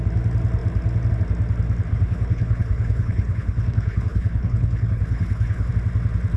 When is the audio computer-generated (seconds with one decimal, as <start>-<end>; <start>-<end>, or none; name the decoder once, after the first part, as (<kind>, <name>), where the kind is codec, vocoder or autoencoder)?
1.9-5.7 (codec, HILCodec)